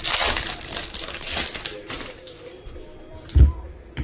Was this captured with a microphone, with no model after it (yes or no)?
yes